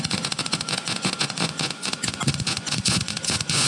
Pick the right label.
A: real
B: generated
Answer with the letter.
B